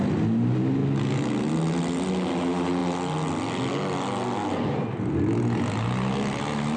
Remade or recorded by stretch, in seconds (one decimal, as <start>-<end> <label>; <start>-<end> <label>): 0.0-6.8 recorded